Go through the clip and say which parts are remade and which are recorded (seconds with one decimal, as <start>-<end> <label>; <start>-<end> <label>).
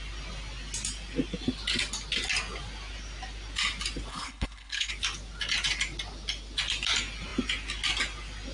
0.0-4.1 recorded; 4.1-4.9 remade; 4.9-8.5 recorded